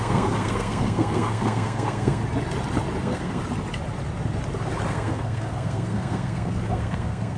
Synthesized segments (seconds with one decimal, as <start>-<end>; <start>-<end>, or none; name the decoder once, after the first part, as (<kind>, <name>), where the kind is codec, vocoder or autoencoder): 0.0-2.2 (codec, SNAC); 3.0-3.4; 4.9-7.4